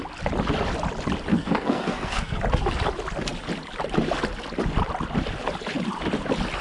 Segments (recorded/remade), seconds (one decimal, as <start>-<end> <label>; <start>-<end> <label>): 0.0-1.3 recorded; 1.3-2.4 remade; 2.4-6.6 recorded